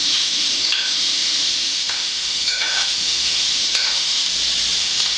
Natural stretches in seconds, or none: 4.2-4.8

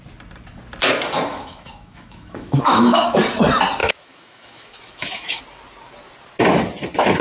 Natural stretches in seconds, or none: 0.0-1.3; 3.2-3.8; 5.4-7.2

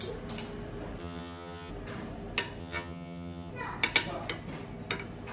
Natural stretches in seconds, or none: 0.0-1.0; 1.7-2.6; 3.5-5.3

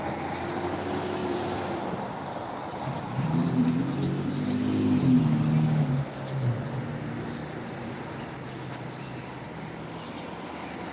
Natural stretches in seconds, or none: 0.0-1.2; 3.8-7.4; 9.9-10.9